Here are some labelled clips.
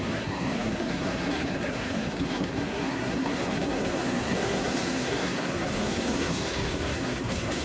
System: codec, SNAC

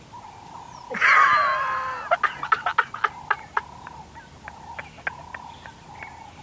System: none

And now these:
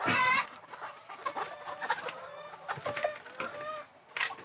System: none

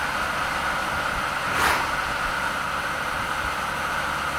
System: none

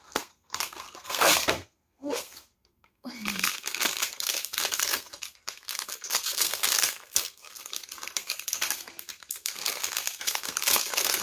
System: codec, SNAC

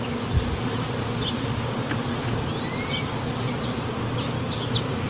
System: none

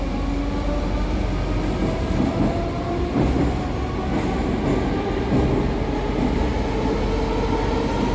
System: none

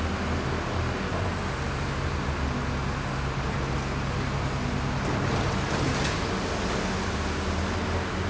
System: none